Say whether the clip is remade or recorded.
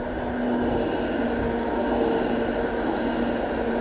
recorded